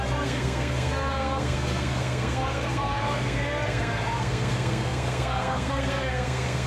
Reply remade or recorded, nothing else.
remade